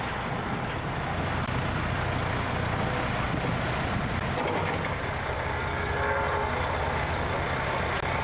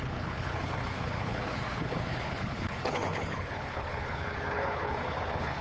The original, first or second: first